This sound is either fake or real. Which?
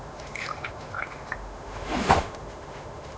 fake